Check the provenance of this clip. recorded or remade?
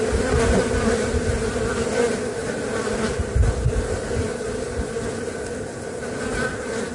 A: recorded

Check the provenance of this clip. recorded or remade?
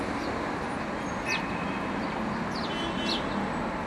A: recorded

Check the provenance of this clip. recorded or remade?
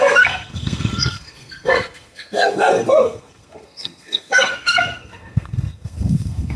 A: remade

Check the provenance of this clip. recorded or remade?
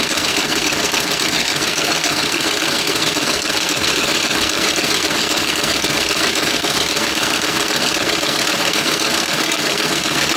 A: remade